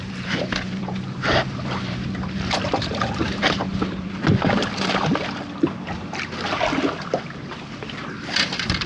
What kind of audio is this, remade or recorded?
remade